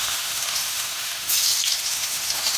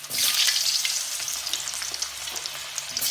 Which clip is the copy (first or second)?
first